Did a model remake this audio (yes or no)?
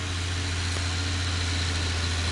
no